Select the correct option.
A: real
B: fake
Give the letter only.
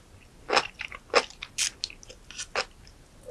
A